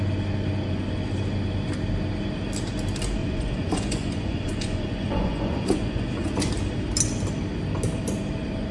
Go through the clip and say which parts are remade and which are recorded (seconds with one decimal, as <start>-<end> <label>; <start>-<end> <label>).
0.0-3.2 recorded; 3.2-6.5 remade; 6.5-8.7 recorded